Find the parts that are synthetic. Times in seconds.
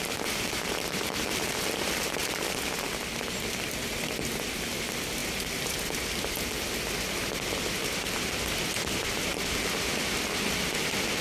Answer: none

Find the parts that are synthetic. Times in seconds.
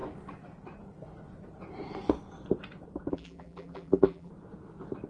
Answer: 3.1-4.3 (vocoder, BigVGAN v2)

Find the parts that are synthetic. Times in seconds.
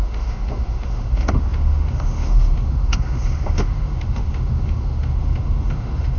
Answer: 0.0-6.2 (autoencoder, DAC-VAE)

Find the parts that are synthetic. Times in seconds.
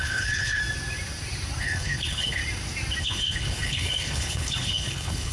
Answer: 0.0-0.6 (codec, HILCodec); 1.6-2.4; 3.0-5.3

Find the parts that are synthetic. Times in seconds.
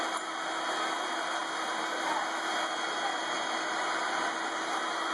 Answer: none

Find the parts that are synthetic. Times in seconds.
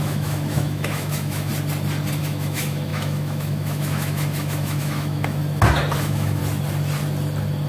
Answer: 0.0-1.5 (autoencoder, DAC-VAE); 2.2-5.4; 6.0-6.4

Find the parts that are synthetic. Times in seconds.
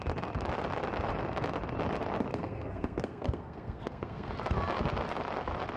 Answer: 2.3-4.3 (codec, SNAC)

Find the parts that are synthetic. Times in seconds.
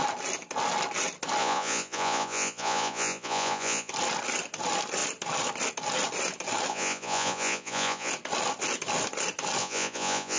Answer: 1.4-3.9 (vocoder, Vocos); 6.7-8.1; 9.6-10.4